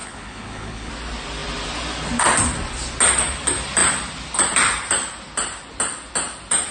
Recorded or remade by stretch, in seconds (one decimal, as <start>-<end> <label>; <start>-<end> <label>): 0.0-0.9 remade; 0.9-6.7 recorded